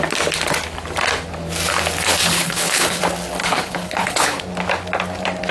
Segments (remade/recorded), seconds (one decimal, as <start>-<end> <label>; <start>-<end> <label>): 0.0-2.2 recorded; 2.2-3.0 remade; 3.0-3.4 recorded; 3.4-4.4 remade; 4.4-5.5 recorded